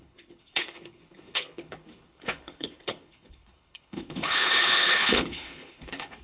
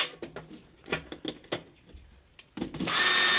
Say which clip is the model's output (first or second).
first